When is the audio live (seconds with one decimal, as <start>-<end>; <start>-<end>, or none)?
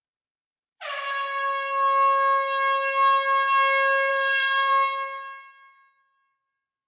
0.0-4.1; 4.7-6.9